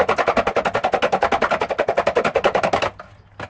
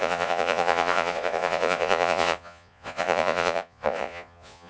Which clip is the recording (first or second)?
first